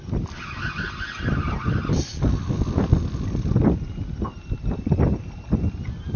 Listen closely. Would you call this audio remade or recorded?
recorded